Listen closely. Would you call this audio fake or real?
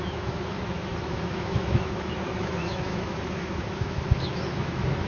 fake